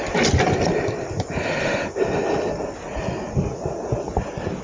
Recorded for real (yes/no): yes